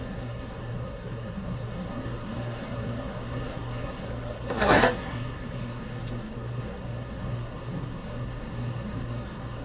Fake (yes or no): yes